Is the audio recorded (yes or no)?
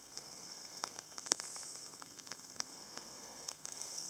no